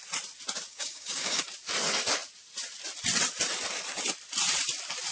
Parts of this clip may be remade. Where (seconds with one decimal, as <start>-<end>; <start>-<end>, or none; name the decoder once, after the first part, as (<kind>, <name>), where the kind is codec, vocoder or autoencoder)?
0.7-1.4 (codec, DAC)